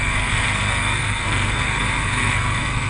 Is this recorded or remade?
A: remade